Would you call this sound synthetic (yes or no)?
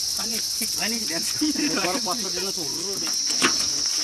yes